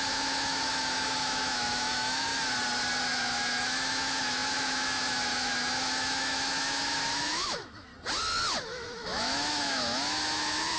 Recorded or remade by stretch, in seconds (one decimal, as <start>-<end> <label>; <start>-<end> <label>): 0.0-2.3 remade; 2.3-3.0 recorded; 3.0-7.9 remade; 7.9-8.6 recorded; 8.6-10.8 remade

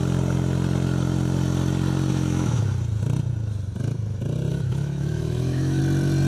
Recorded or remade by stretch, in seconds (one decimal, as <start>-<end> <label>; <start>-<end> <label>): 0.0-2.1 recorded; 2.1-2.6 remade; 2.6-4.5 recorded; 4.5-5.8 remade; 5.8-6.3 recorded

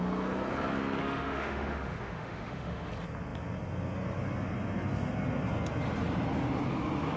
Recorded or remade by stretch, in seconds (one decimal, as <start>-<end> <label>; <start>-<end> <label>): 0.0-1.0 recorded; 1.0-2.9 remade; 2.9-7.2 recorded

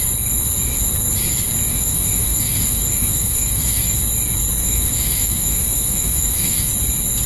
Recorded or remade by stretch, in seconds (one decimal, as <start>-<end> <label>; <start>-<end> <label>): 0.0-1.7 recorded; 1.7-4.0 remade; 4.0-4.6 recorded; 4.6-6.7 remade; 6.7-7.3 recorded

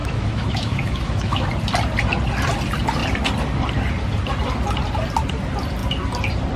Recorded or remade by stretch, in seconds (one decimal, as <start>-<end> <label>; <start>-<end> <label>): 0.0-1.5 remade; 1.5-6.6 recorded

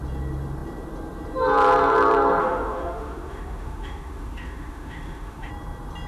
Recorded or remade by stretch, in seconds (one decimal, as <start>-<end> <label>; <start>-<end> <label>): 0.0-2.4 recorded; 2.4-5.5 remade; 5.5-6.1 recorded

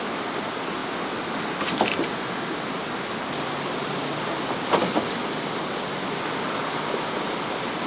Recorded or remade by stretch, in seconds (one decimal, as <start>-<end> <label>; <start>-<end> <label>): 0.0-7.9 recorded